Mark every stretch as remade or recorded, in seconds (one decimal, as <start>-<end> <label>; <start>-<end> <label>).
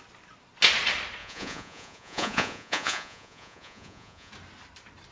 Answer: 0.0-1.2 recorded; 1.2-4.3 remade; 4.3-5.1 recorded